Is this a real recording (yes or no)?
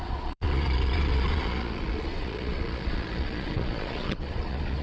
no